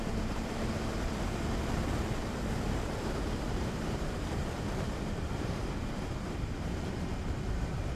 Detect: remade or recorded remade